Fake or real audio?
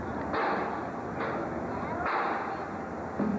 real